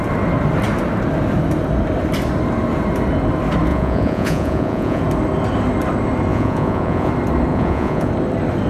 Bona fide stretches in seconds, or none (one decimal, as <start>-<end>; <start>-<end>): 0.0-3.7; 5.0-6.3; 7.1-7.5; 8.1-8.7